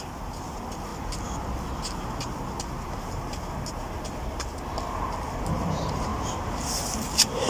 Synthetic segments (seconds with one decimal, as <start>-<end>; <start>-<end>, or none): none